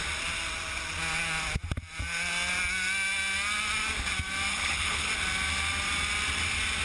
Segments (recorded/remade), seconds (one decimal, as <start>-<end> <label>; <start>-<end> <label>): 0.0-4.5 recorded; 4.5-5.1 remade; 5.1-6.8 recorded